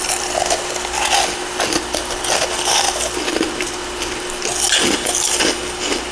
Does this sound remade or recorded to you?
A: recorded